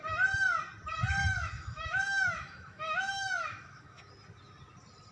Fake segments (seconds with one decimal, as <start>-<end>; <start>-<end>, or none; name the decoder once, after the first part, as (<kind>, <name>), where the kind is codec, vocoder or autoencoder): 1.3-4.1 (autoencoder, DAC-VAE)